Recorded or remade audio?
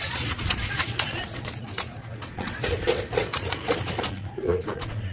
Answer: remade